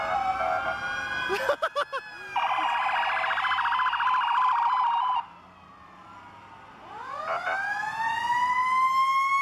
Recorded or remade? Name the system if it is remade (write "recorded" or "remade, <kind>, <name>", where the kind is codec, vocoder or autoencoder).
recorded